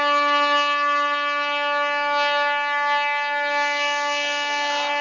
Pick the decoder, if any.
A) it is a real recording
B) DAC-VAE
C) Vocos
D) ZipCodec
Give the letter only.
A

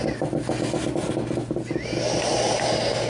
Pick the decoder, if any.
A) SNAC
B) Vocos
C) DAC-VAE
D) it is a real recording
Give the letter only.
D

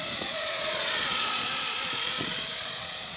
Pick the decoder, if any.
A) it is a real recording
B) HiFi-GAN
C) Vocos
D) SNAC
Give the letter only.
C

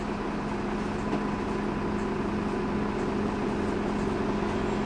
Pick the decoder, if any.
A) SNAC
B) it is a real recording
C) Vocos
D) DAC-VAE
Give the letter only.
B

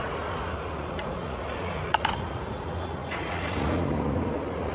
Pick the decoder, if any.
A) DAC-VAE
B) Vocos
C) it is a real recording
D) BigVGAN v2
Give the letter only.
B